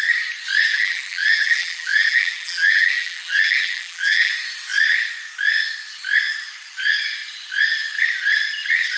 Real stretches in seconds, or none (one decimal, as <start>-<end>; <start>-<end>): 0.0-0.7; 4.3-9.0